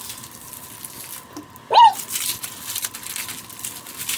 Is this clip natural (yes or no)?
yes